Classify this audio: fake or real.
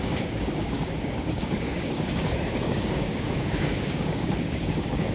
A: fake